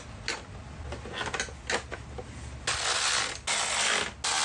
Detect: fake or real real